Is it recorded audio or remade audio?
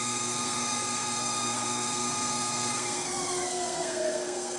remade